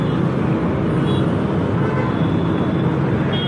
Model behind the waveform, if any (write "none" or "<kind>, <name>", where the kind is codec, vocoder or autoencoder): none